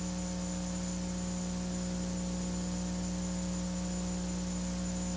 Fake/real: real